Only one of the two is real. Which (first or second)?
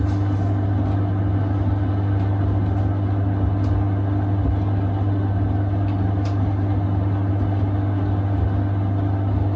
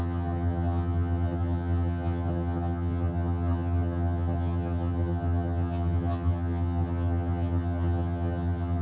first